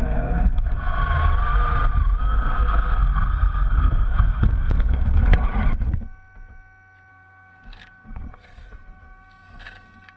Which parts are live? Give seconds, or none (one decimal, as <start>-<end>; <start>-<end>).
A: 1.0-2.2; 5.5-7.1